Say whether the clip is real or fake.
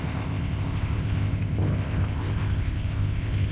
fake